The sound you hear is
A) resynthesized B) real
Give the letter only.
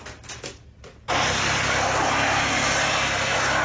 B